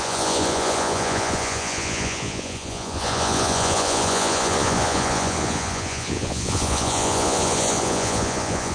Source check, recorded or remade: remade